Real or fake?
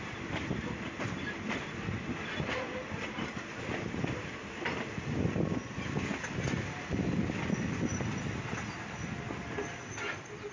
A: real